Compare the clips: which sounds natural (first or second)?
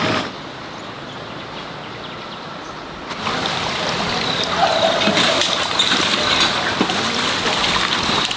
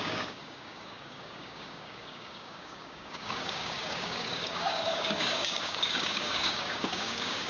first